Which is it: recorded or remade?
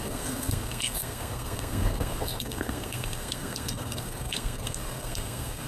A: remade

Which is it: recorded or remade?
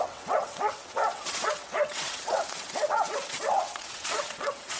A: remade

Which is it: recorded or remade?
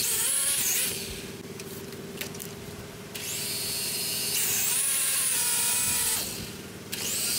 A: recorded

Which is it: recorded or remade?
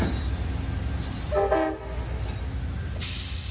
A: recorded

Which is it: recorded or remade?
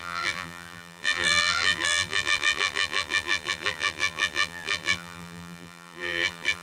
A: remade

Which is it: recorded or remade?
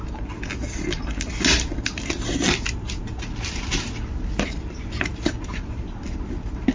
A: recorded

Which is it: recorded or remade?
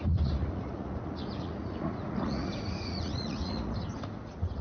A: remade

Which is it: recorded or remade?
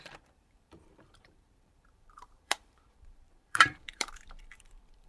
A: remade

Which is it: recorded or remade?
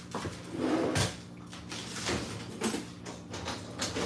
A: recorded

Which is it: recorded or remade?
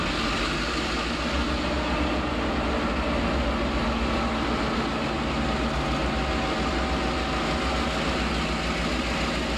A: recorded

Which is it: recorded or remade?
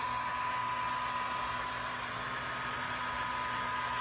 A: recorded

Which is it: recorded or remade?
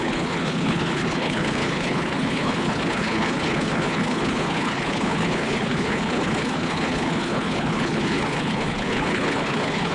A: remade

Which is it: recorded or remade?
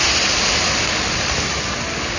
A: recorded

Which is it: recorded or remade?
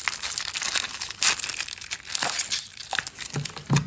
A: recorded